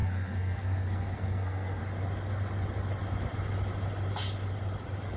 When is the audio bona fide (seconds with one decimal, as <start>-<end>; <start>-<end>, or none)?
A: 1.8-5.2